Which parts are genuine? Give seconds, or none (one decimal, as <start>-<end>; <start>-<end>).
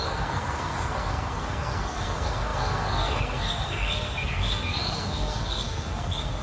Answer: none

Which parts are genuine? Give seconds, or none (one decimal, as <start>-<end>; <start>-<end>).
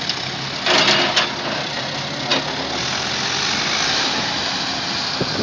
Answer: 0.0-5.4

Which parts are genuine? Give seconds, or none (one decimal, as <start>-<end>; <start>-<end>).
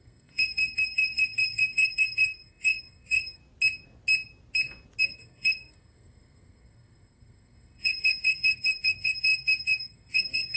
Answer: 3.4-5.0